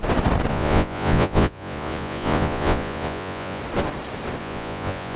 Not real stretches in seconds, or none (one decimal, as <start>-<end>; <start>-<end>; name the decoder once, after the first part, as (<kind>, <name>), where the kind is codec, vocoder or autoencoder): 0.5-3.6 (vocoder, Vocos); 4.4-5.2